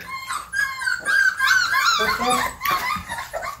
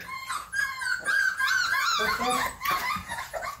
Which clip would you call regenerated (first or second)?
second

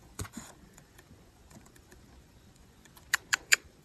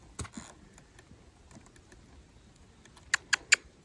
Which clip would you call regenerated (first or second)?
first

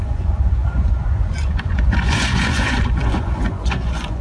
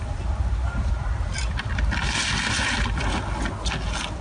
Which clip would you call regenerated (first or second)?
first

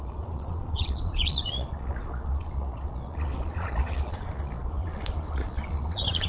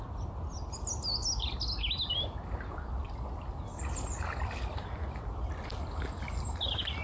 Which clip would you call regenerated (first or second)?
first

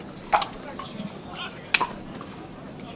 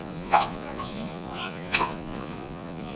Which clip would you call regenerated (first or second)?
second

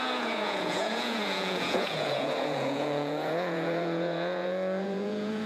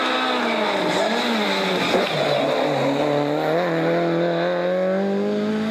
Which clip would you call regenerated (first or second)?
first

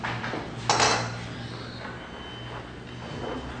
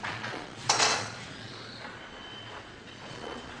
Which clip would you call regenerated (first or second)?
second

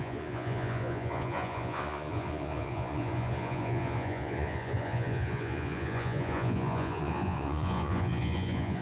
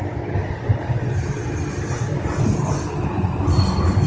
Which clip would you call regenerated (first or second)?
first